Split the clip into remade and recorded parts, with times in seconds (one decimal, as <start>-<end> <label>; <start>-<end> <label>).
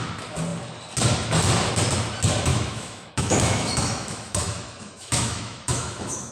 0.0-2.5 recorded; 2.5-6.3 remade